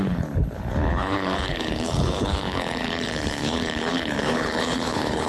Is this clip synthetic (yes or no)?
yes